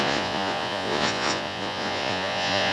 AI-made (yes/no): yes